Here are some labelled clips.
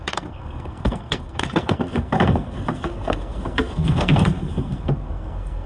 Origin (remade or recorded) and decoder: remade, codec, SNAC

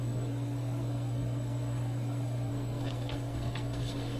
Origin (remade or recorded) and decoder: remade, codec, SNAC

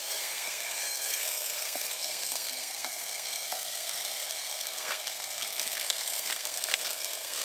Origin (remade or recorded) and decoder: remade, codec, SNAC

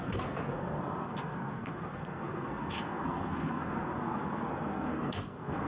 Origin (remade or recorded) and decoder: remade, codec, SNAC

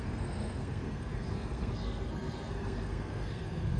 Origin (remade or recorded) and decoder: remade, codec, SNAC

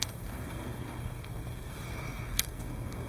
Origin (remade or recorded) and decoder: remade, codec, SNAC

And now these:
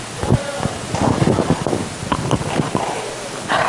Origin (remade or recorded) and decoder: recorded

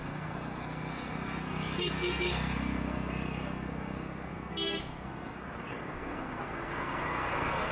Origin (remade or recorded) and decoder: remade, codec, SNAC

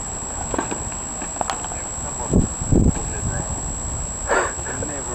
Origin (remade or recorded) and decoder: recorded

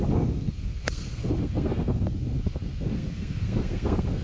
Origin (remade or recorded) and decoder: remade, codec, SNAC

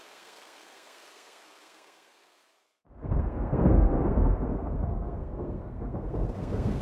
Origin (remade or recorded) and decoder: remade, codec, SNAC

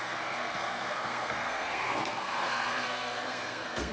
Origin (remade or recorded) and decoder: remade, codec, SNAC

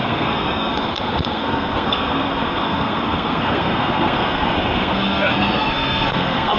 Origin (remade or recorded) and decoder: remade, codec, SNAC